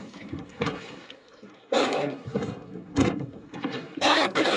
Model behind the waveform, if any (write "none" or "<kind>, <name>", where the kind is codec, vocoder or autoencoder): codec, SNAC